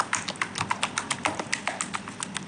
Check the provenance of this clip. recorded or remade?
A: recorded